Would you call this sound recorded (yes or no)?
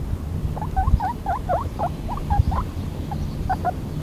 no